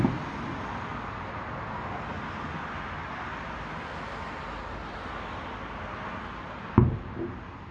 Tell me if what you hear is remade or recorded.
recorded